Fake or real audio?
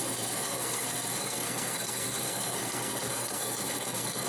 fake